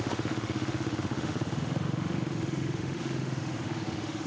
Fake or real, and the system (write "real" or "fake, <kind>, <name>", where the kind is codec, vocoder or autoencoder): fake, autoencoder, DAC-VAE